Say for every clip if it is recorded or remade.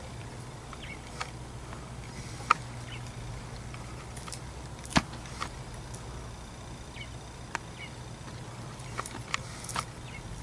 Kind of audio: recorded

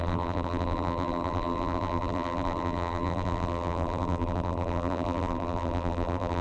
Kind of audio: remade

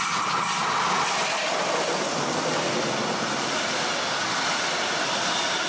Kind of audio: recorded